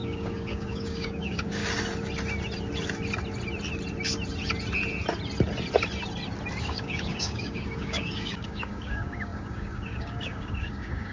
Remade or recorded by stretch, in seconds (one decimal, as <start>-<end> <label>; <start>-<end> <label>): 0.0-1.6 remade; 1.6-6.6 recorded; 6.6-11.1 remade